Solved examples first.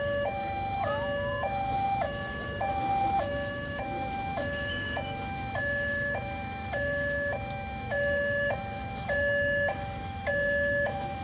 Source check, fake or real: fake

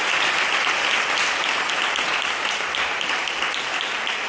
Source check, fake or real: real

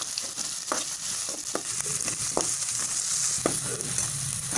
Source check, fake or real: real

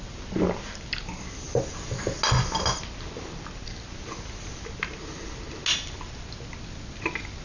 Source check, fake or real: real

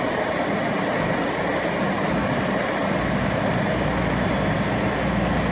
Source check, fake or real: real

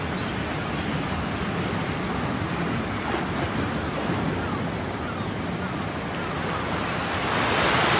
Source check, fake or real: real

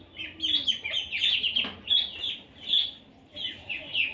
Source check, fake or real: real